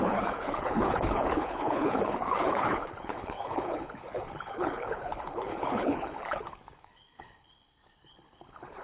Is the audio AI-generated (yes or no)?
yes